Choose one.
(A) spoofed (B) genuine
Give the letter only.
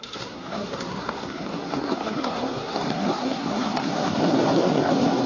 A